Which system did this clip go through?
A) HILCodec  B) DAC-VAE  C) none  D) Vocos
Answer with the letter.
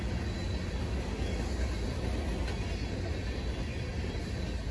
C